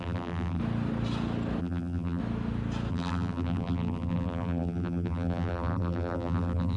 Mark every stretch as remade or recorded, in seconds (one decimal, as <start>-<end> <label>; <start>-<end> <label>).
0.0-0.6 remade; 0.6-1.6 recorded; 1.6-2.2 remade; 2.2-2.9 recorded; 2.9-6.8 remade